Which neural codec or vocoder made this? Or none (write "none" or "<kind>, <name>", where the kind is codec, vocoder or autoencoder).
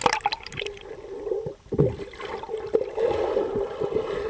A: none